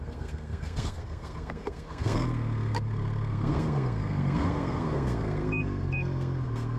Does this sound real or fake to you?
fake